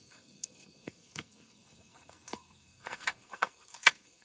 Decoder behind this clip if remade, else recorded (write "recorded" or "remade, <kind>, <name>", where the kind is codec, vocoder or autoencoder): remade, codec, SNAC